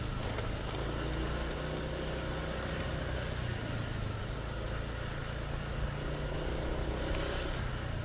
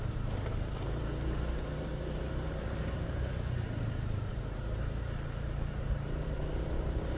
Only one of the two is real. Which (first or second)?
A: first